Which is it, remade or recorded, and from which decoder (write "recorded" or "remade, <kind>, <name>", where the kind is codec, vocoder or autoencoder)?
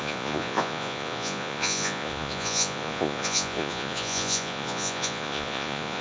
remade, vocoder, Vocos